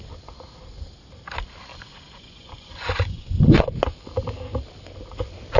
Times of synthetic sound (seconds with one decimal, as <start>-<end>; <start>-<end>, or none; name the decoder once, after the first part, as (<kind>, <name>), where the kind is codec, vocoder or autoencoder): 1.7-3.8 (vocoder, Vocos)